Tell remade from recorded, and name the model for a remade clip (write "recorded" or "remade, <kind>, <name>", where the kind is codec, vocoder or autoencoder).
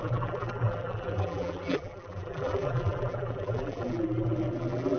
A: remade, vocoder, BigVGAN v2